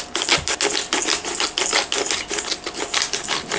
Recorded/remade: recorded